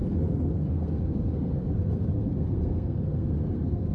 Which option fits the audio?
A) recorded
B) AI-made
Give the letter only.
B